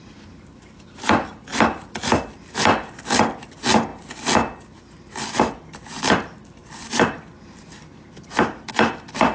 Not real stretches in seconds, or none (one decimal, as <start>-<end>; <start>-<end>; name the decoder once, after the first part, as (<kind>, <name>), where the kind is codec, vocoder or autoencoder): 1.5-2.4 (vocoder, BigVGAN v2); 6.6-8.1